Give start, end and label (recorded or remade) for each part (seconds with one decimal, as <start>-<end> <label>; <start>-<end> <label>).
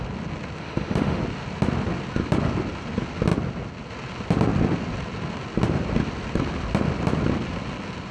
0.0-0.6 recorded; 0.6-1.2 remade; 1.2-8.1 recorded